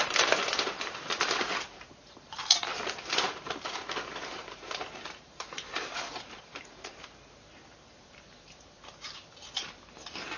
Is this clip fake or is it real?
fake